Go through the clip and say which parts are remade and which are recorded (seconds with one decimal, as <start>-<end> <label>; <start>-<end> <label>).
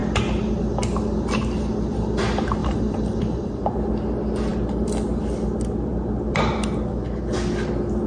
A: 0.0-2.6 recorded; 2.6-3.9 remade; 3.9-4.5 recorded; 4.5-5.2 remade; 5.2-5.9 recorded; 5.9-6.5 remade; 6.5-8.1 recorded